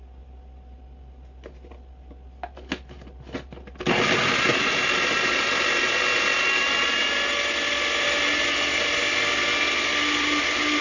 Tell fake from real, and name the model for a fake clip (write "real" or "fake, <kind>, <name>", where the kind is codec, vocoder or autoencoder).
real